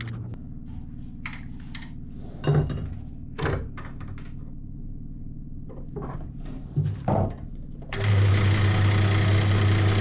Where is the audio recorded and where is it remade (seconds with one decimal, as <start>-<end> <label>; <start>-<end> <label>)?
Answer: 0.0-4.6 recorded; 4.6-8.3 remade; 8.3-10.0 recorded